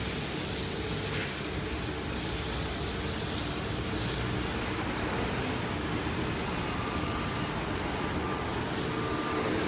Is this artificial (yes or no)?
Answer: no